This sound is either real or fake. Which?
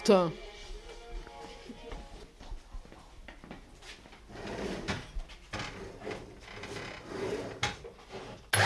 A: real